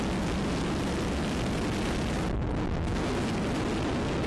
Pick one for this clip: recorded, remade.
recorded